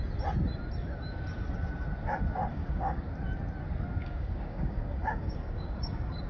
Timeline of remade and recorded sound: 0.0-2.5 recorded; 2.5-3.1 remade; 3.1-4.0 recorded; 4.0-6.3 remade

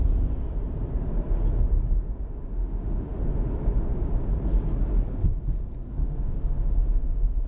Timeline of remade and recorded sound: 0.0-2.6 recorded; 2.6-3.2 remade; 3.2-6.0 recorded; 6.0-7.5 remade

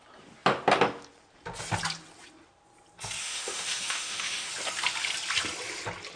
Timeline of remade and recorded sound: 0.0-3.2 recorded; 3.2-4.5 remade; 4.5-6.2 recorded

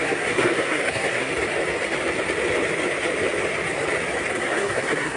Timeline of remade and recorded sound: 0.0-1.3 remade; 1.3-4.3 recorded; 4.3-5.2 remade

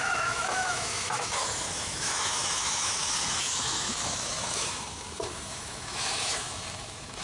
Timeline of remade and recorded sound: 0.0-7.2 remade

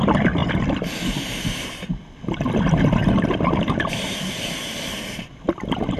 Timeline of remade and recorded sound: 0.0-0.4 remade; 0.4-1.8 recorded; 1.8-6.0 remade